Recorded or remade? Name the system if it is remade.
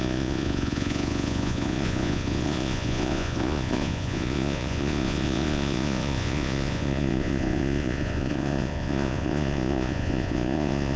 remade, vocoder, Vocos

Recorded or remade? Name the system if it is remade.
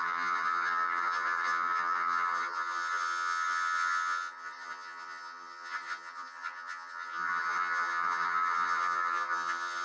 remade, vocoder, HiFi-GAN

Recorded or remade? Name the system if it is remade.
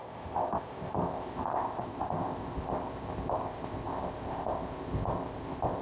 remade, codec, ZipCodec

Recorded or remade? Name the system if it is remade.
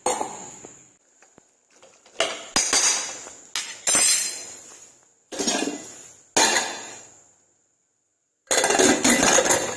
recorded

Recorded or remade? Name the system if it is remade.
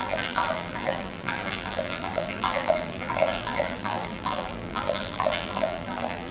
remade, vocoder, BigVGAN v2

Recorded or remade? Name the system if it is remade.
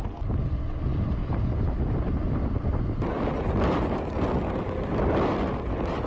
recorded